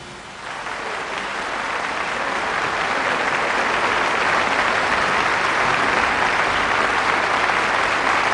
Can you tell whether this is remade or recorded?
recorded